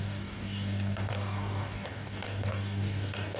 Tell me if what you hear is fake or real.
fake